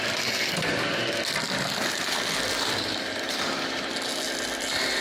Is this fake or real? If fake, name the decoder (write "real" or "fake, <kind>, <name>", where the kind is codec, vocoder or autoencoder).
real